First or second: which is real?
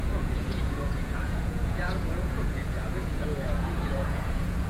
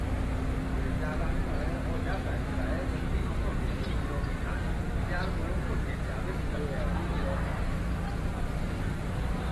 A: second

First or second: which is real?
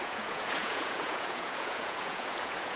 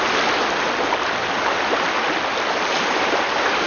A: second